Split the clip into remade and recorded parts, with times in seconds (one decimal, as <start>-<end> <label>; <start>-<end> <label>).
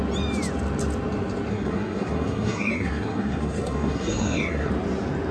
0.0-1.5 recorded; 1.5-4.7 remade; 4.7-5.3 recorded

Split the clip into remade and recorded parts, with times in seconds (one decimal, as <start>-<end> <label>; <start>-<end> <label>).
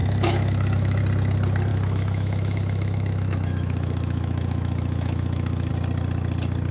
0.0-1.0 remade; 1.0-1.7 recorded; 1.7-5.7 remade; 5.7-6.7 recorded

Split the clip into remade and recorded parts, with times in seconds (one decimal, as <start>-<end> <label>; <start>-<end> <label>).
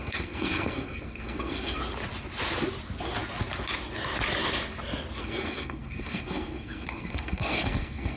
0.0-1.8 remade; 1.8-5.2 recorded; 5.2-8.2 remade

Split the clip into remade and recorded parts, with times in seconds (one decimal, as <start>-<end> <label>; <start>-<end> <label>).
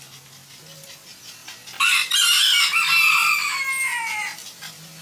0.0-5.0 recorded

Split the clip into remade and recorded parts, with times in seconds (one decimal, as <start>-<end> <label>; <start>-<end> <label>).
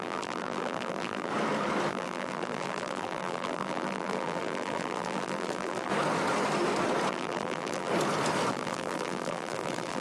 0.0-1.3 remade; 1.3-1.9 recorded; 1.9-5.9 remade; 5.9-7.1 recorded; 7.1-7.9 remade; 7.9-8.5 recorded; 8.5-10.0 remade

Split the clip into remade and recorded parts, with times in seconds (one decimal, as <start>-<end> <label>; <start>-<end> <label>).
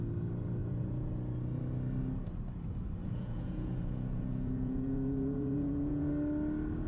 0.0-0.6 recorded; 0.6-1.1 remade; 1.1-3.0 recorded; 3.0-6.1 remade; 6.1-6.9 recorded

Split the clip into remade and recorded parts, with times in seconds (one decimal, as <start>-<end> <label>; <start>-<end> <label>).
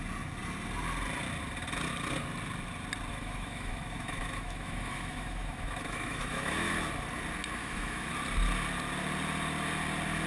0.0-3.1 recorded; 3.1-6.7 remade; 6.7-7.6 recorded; 7.6-8.1 remade; 8.1-10.3 recorded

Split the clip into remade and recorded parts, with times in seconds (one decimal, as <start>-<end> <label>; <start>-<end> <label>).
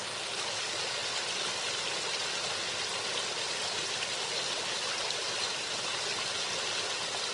0.0-7.3 recorded